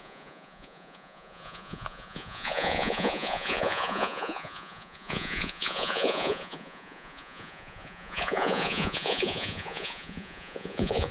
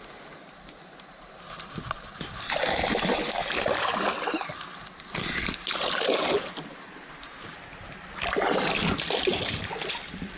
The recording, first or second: second